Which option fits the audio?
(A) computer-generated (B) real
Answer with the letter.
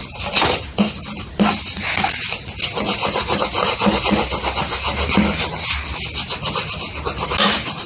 B